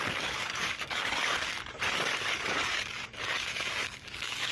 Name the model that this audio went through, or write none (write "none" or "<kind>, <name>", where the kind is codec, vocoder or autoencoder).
codec, DAC